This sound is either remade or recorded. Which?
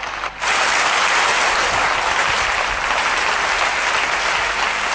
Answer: recorded